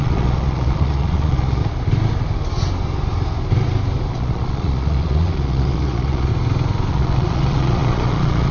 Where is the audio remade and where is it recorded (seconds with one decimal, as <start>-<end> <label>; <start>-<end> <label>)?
0.0-1.6 remade; 1.6-4.1 recorded; 4.1-6.3 remade; 6.3-6.9 recorded; 6.9-8.5 remade